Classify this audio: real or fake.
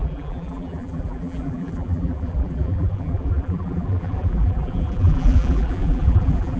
fake